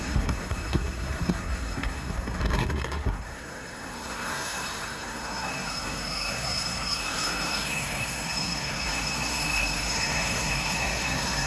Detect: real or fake fake